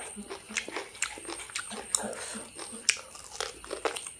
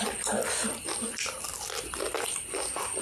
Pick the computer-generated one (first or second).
second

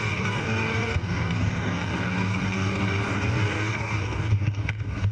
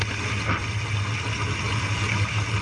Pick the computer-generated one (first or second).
first